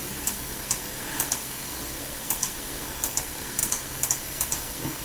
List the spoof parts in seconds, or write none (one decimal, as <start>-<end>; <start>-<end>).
0.0-5.0